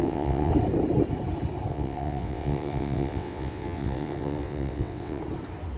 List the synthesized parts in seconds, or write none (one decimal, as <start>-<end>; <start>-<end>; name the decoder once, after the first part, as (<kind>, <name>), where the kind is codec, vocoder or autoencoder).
0.0-0.5 (vocoder, WaveNeXt); 1.7-5.2